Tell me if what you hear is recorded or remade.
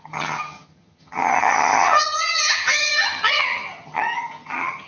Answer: remade